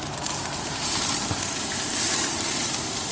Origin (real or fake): fake